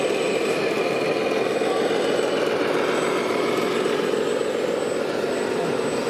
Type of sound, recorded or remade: recorded